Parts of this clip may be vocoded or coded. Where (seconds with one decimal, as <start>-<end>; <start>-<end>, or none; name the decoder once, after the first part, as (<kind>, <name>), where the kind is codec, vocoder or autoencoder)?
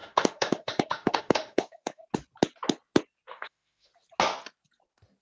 0.0-2.0 (autoencoder, DAC-VAE); 3.3-3.9